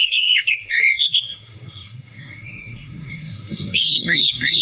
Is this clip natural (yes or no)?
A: no